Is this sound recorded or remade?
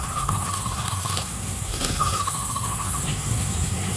remade